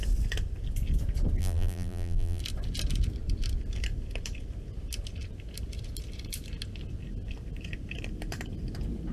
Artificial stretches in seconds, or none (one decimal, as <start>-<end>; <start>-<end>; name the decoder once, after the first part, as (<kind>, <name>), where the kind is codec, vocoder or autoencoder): 1.4-2.4 (vocoder, BigVGAN v2)